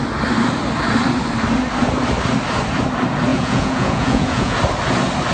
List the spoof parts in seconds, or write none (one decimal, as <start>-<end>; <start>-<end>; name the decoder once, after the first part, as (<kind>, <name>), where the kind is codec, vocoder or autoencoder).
3.3-4.6 (vocoder, Vocos)